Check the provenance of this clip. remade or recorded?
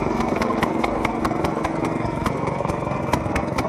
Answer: remade